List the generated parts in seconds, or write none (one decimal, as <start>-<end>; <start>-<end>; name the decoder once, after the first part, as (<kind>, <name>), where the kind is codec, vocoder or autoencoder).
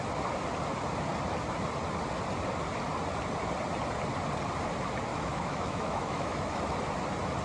5.1-6.6 (autoencoder, DAC-VAE)